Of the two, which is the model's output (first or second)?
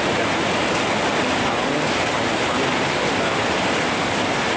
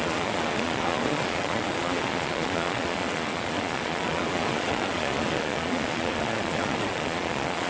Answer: second